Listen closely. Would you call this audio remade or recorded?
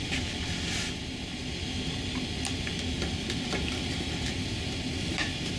recorded